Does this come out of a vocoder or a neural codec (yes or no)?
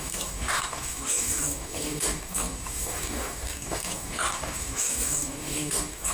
yes